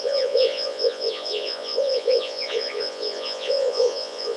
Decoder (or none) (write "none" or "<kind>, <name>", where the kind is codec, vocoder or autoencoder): vocoder, Vocos